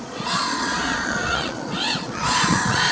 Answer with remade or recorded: remade